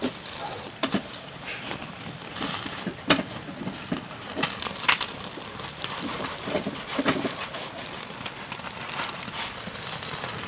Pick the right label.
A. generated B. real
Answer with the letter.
B